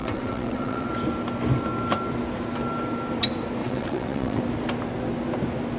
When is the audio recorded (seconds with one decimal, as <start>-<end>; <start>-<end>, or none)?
0.9-3.6; 4.4-5.8